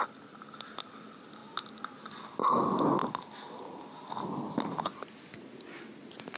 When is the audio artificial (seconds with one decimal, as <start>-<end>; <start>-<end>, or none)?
none